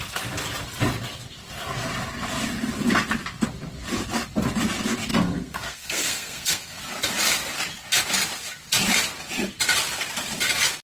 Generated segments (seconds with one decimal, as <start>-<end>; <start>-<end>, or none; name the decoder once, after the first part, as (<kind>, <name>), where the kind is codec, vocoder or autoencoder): 5.1-6.8 (codec, SNAC)